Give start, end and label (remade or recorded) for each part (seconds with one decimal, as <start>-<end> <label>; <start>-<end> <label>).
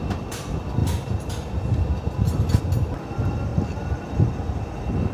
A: 0.0-5.1 recorded